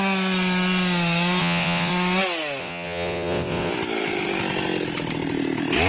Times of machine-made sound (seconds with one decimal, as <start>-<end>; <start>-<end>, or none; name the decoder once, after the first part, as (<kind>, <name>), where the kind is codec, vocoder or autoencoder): 1.4-1.9 (vocoder, WaveNeXt); 2.6-3.7